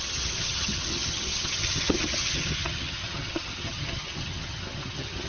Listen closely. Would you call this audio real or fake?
fake